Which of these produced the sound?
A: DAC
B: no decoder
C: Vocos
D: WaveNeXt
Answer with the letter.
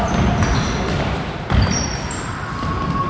B